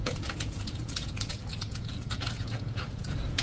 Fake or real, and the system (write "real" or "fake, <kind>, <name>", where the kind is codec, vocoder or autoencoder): fake, vocoder, Vocos